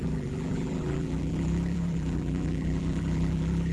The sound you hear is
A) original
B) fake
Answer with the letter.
B